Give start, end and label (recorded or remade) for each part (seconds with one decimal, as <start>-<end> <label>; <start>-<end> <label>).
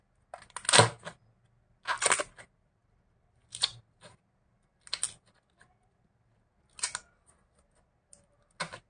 0.0-2.8 recorded; 2.8-3.8 remade; 3.8-8.9 recorded